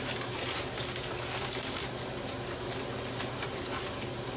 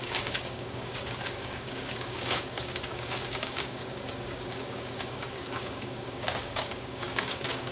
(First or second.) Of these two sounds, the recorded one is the first